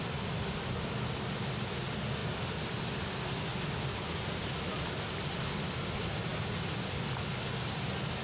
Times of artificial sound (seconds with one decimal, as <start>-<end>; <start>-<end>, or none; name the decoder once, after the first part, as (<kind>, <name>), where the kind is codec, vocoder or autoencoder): none